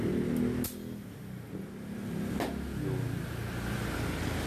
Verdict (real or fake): real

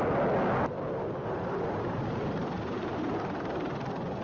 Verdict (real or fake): real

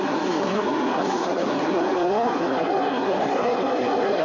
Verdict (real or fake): fake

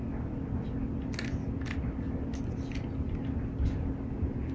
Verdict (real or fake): real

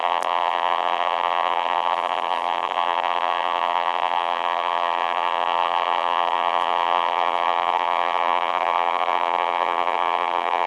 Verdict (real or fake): fake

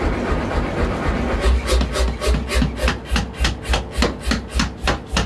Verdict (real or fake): real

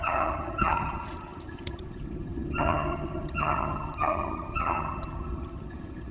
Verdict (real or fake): fake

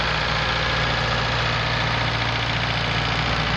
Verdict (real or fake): real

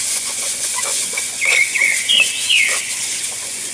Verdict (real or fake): fake